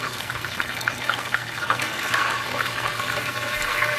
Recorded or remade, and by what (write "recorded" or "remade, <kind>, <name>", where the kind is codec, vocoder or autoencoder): remade, codec, SNAC